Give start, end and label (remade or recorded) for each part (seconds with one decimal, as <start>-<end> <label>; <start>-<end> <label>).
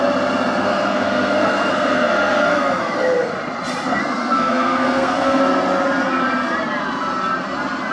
0.0-0.6 recorded; 0.6-3.3 remade; 3.3-4.0 recorded; 4.0-5.4 remade; 5.4-7.9 recorded